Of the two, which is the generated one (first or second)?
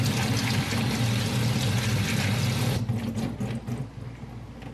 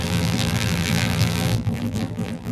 second